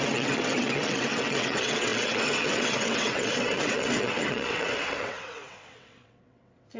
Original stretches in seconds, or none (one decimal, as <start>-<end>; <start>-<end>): none